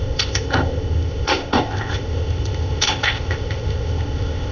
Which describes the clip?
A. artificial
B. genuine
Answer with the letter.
A